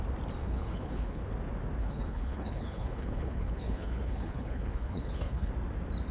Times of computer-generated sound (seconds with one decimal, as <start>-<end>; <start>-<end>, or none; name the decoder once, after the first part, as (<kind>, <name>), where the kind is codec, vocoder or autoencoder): 0.4-1.2 (codec, HILCodec); 1.8-5.5